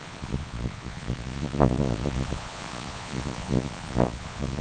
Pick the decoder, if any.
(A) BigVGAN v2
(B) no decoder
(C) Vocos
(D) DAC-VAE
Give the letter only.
C